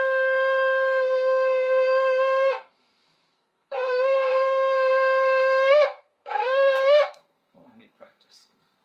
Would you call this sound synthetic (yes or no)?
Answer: yes